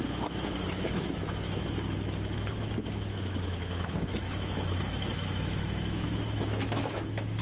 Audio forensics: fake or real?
fake